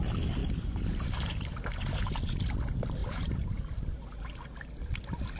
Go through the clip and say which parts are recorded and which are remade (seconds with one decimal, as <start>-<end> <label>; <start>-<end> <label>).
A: 0.0-0.4 recorded; 0.4-2.1 remade; 2.1-3.0 recorded; 3.0-4.2 remade; 4.2-5.4 recorded